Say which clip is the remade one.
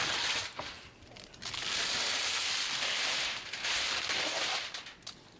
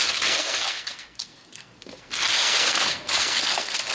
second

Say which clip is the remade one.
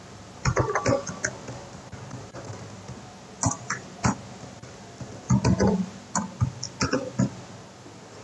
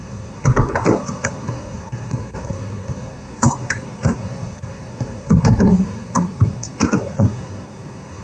second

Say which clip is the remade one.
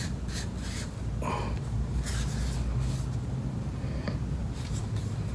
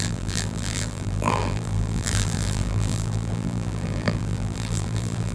second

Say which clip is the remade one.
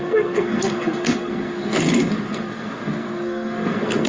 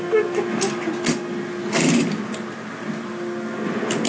first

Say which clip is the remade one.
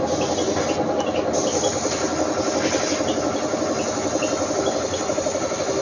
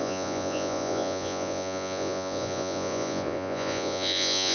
second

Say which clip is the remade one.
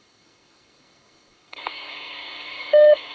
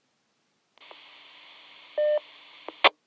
first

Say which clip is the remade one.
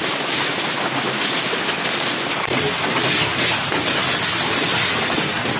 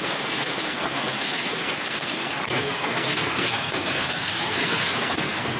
second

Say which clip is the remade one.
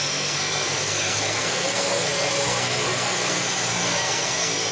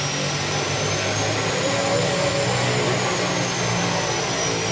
first